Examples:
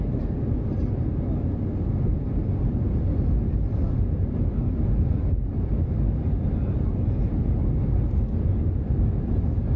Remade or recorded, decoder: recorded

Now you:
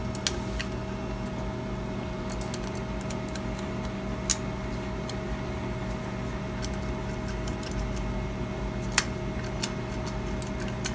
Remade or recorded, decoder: recorded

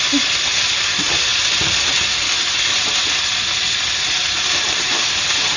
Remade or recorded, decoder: recorded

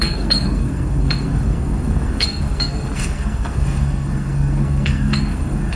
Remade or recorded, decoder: remade, codec, SNAC